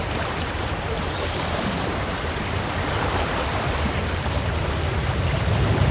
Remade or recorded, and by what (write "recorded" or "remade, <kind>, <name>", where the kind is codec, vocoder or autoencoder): remade, vocoder, BigVGAN v2